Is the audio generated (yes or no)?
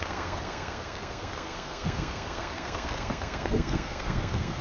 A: yes